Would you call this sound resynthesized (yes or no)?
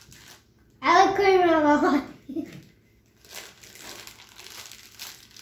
no